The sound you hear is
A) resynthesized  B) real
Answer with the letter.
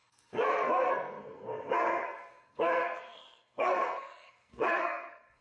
A